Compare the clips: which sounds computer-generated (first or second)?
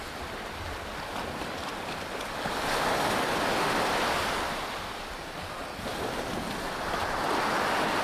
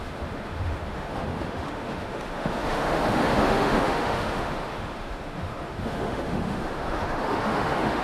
second